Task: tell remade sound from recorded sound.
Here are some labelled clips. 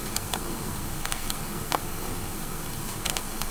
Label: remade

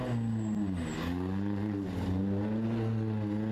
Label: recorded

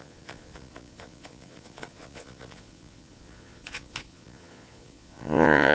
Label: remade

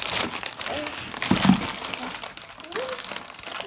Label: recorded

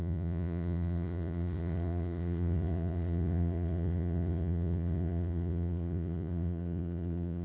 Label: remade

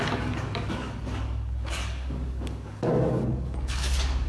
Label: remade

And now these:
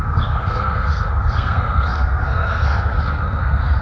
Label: remade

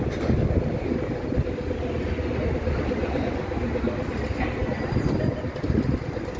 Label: recorded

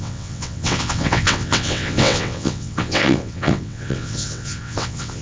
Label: remade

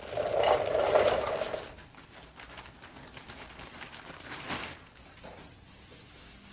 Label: recorded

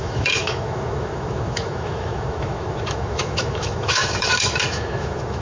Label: remade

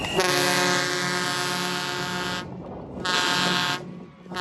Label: recorded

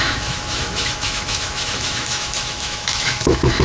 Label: remade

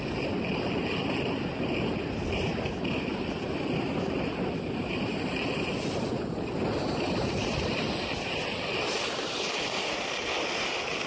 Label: recorded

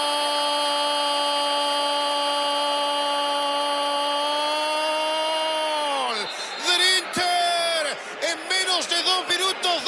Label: recorded